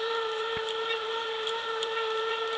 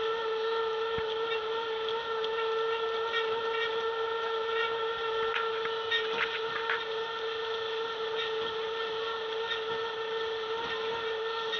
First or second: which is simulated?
first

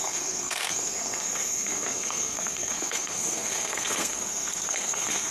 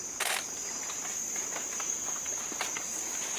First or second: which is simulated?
first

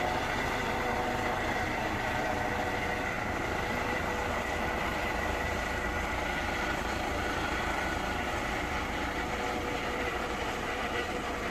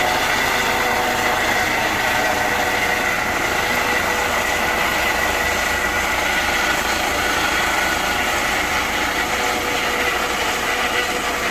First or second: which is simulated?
first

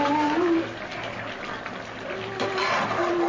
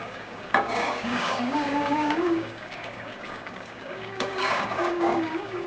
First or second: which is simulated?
second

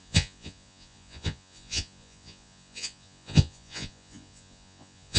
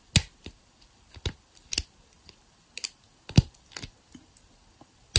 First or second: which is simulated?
first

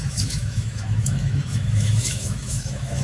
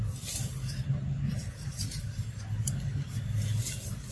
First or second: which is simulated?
first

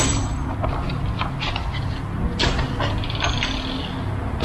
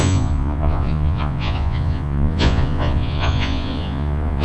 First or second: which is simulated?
second